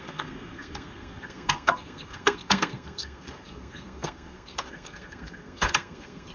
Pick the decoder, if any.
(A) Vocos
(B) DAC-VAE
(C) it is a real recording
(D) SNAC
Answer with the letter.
D